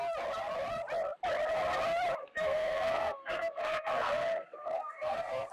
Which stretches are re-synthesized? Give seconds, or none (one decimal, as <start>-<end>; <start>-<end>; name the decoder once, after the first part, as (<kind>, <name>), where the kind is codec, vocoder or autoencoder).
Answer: 2.2-5.5 (codec, SNAC)